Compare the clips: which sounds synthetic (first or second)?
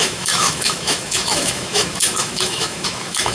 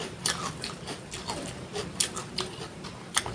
first